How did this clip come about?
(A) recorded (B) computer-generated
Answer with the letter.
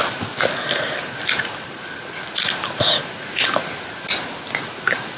A